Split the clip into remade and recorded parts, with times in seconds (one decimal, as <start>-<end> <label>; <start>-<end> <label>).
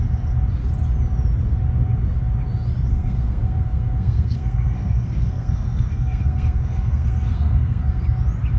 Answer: 0.0-2.9 recorded; 2.9-8.0 remade; 8.0-8.6 recorded